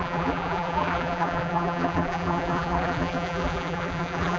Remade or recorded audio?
remade